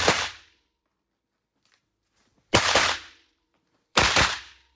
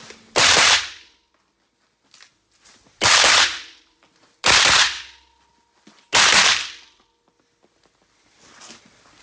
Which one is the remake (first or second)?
first